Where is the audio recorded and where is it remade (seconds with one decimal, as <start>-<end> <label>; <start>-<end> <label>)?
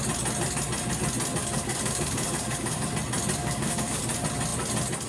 0.0-1.4 recorded; 1.4-2.9 remade; 2.9-3.4 recorded; 3.4-4.0 remade; 4.0-5.1 recorded